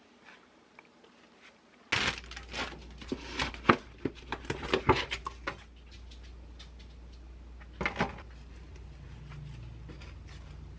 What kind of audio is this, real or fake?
real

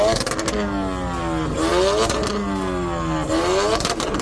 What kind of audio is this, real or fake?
real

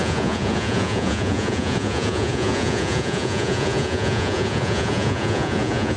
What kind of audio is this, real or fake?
fake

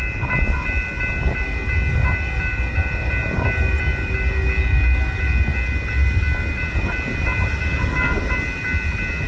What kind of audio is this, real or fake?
real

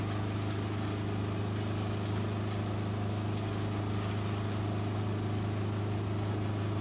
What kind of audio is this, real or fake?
real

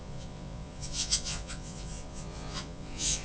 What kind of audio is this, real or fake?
fake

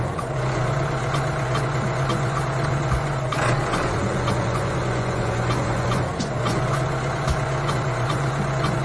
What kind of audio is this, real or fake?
fake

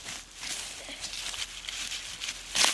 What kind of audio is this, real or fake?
real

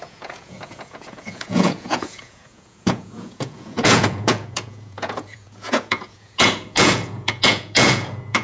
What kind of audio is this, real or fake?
fake